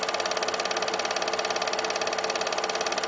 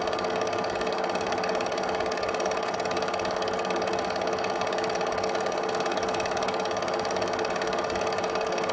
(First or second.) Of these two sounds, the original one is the first